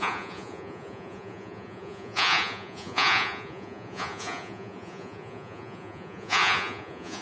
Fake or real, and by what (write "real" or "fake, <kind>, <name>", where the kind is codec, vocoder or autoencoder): fake, vocoder, Vocos